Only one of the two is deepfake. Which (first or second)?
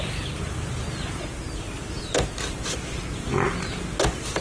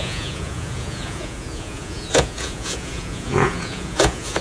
second